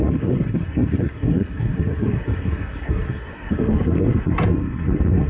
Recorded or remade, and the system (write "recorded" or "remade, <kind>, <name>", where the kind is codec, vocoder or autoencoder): remade, codec, SNAC